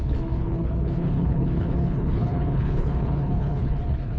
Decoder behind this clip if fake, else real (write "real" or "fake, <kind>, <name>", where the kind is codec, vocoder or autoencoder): fake, codec, HILCodec